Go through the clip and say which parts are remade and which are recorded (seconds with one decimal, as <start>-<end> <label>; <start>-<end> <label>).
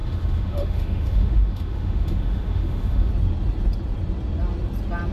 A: 0.0-3.1 remade; 3.1-5.1 recorded